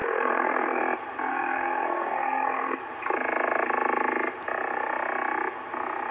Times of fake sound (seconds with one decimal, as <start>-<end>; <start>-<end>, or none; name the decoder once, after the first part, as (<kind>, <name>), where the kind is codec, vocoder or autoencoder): 0.0-0.8 (codec, SNAC); 1.3-2.8